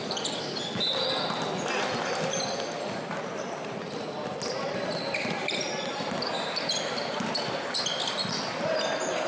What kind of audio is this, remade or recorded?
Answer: recorded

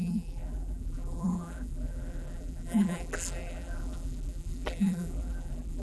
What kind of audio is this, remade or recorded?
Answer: remade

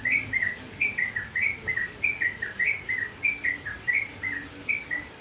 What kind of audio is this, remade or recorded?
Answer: recorded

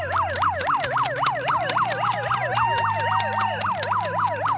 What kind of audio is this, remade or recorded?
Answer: recorded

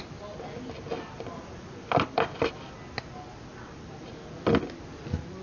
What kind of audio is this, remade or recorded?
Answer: recorded